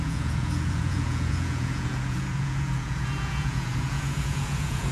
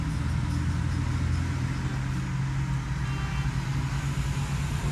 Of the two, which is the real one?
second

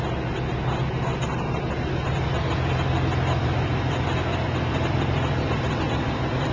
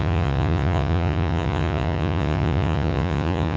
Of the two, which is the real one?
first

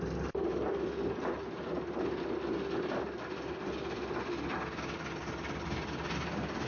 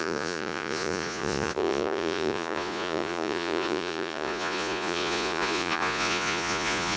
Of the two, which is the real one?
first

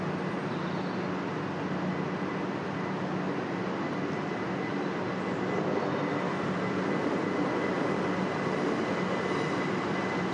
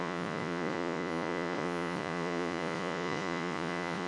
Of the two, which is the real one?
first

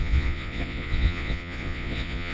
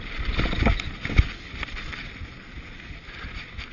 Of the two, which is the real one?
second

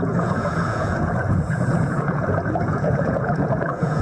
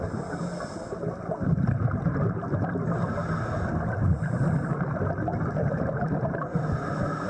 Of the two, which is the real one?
second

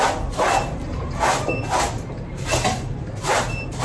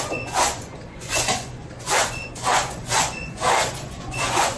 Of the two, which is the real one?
first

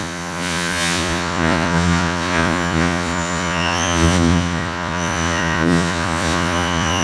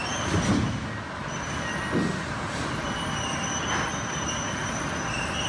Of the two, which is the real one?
second